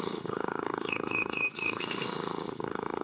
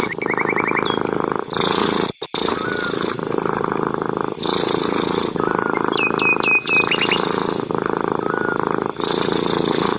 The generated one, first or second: first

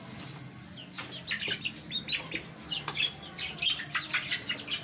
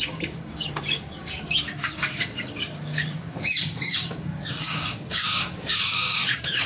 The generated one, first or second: second